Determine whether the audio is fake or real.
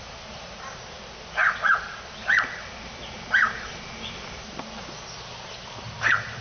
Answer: real